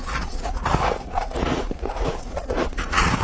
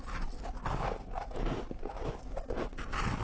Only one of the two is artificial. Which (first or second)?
first